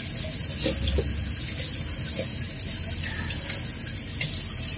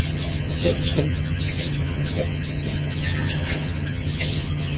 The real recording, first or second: first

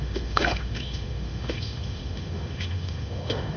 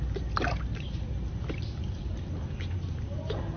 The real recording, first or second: second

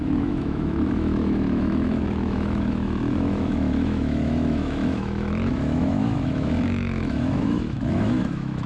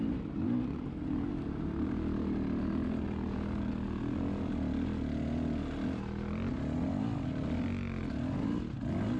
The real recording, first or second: second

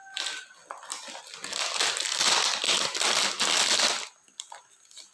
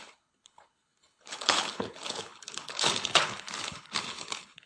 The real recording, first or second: first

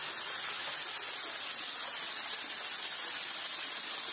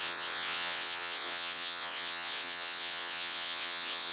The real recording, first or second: first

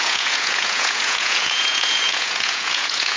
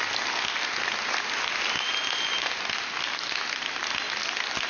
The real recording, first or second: second